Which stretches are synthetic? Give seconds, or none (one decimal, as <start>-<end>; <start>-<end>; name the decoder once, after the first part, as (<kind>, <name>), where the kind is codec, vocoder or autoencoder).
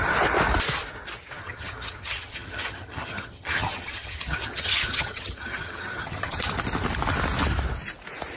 1.4-6.4 (vocoder, HiFi-GAN)